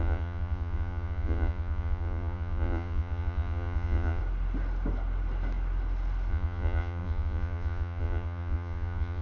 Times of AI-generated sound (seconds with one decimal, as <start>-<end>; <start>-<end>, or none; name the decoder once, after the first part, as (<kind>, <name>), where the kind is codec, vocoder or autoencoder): 0.0-4.2 (vocoder, Vocos); 6.3-9.2